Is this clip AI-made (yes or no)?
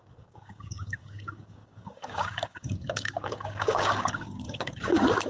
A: yes